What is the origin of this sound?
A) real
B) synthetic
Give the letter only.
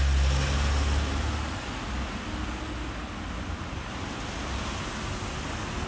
A